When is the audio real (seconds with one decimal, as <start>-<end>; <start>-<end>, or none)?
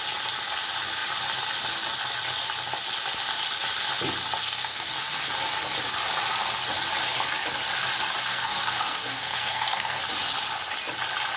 0.0-4.4; 4.9-8.3; 10.0-11.4